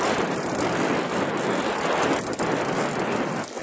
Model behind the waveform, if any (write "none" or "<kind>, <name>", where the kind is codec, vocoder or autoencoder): none